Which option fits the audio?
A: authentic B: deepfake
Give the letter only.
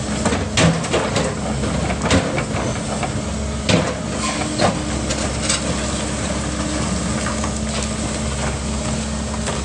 A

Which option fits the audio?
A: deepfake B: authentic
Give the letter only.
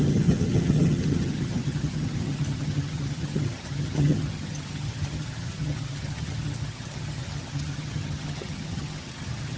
A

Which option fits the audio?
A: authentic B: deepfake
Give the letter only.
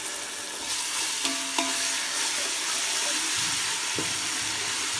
A